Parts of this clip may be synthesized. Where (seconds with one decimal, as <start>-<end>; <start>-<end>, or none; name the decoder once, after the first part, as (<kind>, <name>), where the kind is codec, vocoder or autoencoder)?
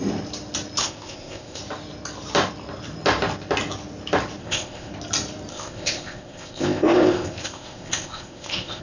0.8-1.6 (codec, ZipCodec); 4.4-4.9; 5.5-8.8